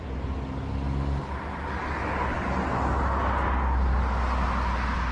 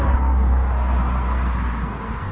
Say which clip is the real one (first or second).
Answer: first